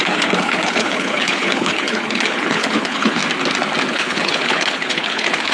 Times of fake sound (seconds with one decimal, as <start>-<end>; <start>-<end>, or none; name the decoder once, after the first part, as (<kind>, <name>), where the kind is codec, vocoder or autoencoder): 0.0-3.2 (codec, HILCodec); 3.9-5.5